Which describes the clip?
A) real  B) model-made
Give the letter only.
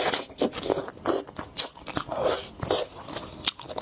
A